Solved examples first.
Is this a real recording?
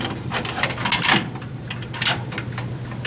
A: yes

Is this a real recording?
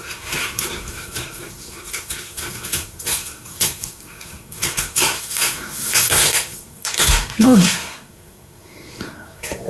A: no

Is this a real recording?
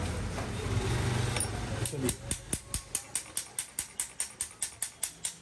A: yes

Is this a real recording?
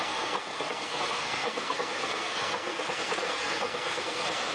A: no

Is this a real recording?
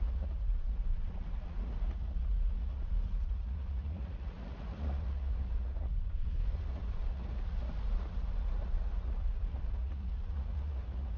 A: no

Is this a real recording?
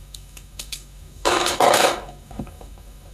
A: no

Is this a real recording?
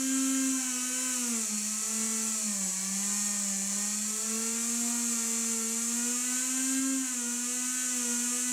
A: yes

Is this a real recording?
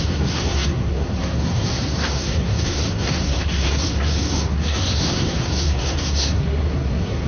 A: no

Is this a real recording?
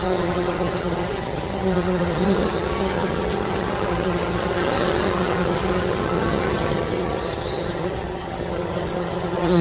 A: no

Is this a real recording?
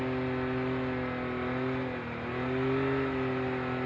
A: yes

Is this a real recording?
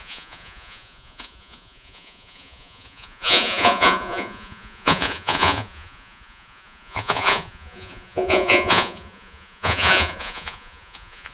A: no